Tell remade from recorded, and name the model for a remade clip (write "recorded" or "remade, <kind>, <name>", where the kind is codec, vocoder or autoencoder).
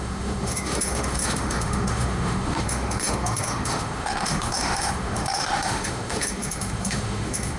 remade, autoencoder, DAC-VAE